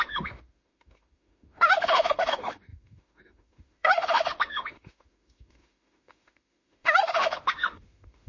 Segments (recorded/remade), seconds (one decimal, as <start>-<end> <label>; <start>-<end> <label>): 0.0-8.3 remade